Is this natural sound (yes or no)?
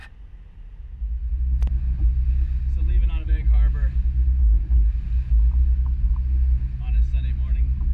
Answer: yes